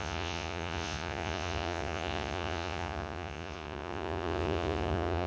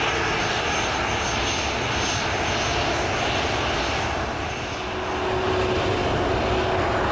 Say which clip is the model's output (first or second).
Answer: first